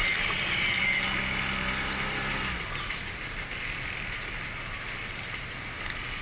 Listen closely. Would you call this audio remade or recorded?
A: recorded